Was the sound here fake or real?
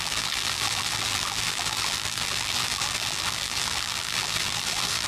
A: fake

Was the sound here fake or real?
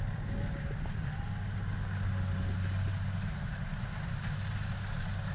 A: real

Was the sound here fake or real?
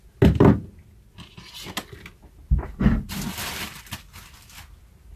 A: real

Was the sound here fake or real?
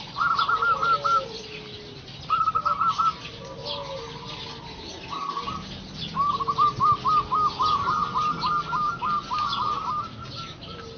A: real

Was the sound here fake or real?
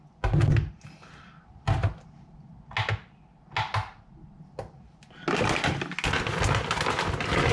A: real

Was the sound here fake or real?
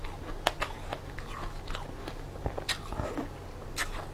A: real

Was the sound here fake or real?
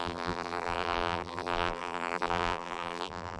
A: fake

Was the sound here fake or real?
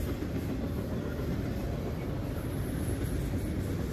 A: fake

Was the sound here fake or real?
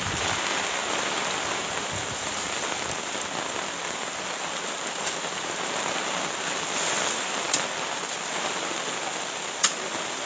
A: fake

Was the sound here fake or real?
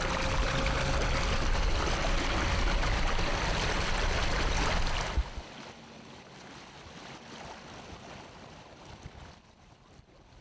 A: real